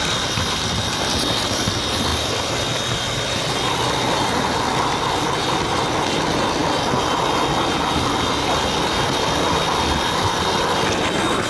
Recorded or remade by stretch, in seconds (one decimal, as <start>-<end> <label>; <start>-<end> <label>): 0.0-11.5 recorded